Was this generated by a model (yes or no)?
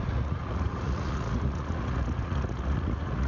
yes